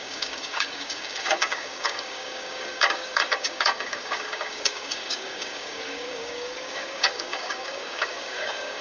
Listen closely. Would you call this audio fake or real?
fake